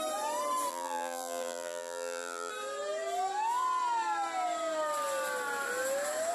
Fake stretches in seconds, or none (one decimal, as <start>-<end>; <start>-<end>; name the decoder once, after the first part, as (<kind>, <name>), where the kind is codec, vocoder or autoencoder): 0.7-2.5 (vocoder, BigVGAN v2)